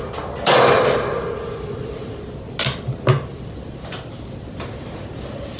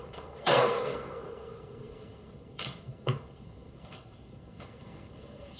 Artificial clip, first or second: second